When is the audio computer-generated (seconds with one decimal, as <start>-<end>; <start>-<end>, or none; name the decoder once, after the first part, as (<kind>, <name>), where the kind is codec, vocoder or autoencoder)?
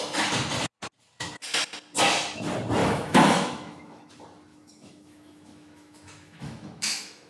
2.8-4.1 (autoencoder, DAC-VAE); 4.5-7.3